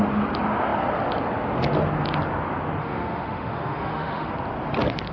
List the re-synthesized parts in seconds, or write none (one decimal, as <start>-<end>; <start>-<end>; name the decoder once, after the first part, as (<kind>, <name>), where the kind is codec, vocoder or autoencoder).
2.8-4.3 (autoencoder, DAC-VAE)